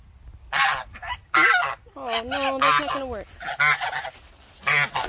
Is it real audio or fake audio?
real